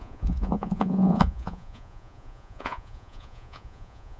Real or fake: fake